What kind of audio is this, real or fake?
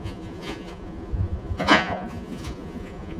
fake